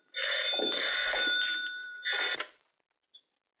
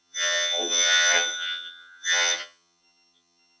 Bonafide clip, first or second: first